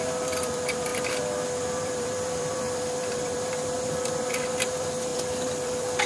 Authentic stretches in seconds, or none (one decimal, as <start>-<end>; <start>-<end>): none